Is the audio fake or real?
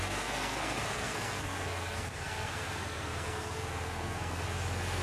fake